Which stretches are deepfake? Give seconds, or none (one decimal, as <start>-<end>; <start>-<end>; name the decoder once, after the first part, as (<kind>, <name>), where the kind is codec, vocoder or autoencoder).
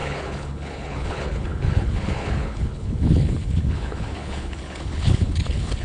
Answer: 0.0-5.8 (codec, HILCodec)